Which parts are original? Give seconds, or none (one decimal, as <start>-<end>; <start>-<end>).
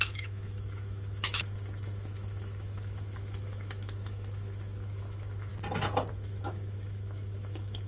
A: 5.5-6.1